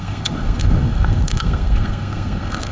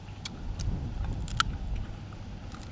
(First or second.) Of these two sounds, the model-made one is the first